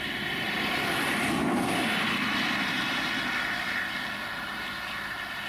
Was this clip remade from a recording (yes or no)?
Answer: no